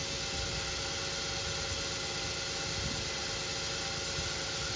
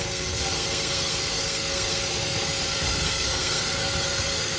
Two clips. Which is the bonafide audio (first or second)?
first